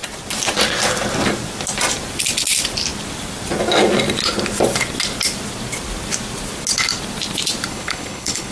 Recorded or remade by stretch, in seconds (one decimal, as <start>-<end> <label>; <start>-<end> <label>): 0.0-7.7 recorded; 7.7-8.5 remade